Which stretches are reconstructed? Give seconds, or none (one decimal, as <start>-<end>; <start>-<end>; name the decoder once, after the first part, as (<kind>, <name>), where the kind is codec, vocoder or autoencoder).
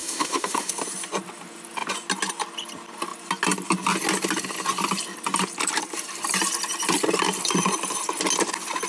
0.0-0.7 (autoencoder, DAC-VAE)